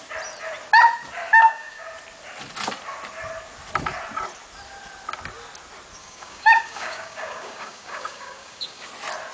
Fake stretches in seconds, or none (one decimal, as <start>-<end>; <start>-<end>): 1.4-1.9; 6.0-8.9

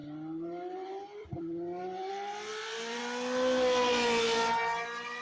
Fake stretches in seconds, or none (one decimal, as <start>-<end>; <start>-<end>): 0.0-2.1; 2.5-3.0

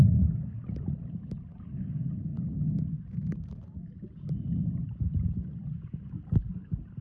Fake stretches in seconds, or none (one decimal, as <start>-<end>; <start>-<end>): none

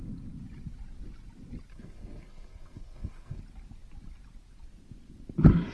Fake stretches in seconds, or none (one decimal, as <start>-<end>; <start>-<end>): 1.7-3.4